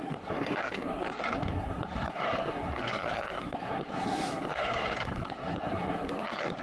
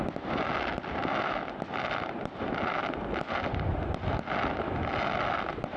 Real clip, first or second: second